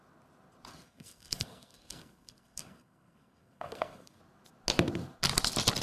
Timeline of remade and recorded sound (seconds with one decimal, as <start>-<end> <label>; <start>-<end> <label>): 0.0-0.7 recorded; 0.7-4.2 remade; 4.2-5.8 recorded